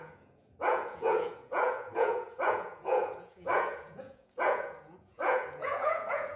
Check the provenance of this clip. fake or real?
fake